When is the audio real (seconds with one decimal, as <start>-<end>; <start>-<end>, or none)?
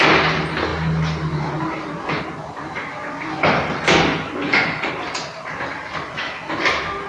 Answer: 0.0-4.1; 4.9-7.1